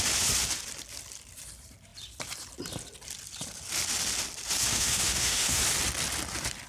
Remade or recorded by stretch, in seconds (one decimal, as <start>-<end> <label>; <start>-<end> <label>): 0.0-4.7 recorded; 4.7-5.6 remade; 5.6-6.7 recorded